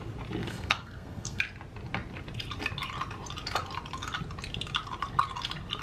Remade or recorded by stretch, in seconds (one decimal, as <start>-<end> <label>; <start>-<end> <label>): 0.0-0.4 recorded; 0.4-1.4 remade; 1.4-5.8 recorded